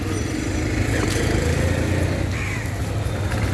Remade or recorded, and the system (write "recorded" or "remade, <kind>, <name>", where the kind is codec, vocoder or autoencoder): recorded